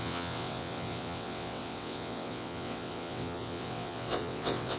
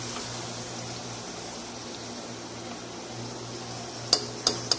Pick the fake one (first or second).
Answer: first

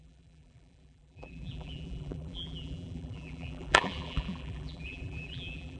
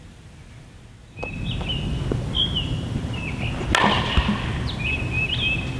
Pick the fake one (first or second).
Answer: first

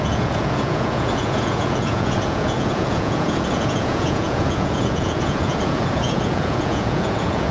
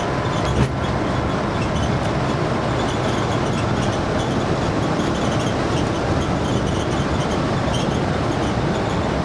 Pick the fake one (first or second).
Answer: first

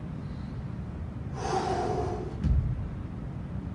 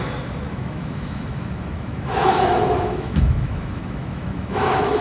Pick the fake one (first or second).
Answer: second